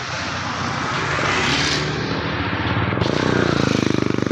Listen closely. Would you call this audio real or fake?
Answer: real